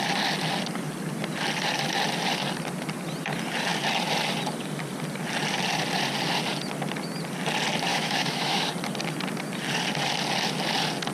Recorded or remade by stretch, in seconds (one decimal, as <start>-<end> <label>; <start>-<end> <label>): 0.0-7.9 recorded; 7.9-8.7 remade; 8.7-11.1 recorded